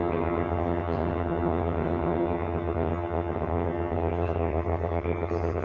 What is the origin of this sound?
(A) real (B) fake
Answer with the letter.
B